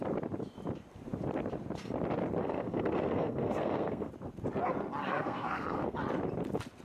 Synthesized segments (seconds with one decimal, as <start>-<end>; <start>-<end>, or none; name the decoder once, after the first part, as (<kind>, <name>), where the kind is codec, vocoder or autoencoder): 2.4-4.1 (codec, SNAC); 5.0-6.0